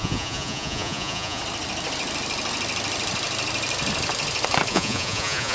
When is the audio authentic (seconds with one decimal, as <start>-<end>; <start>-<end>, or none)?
1.4-4.7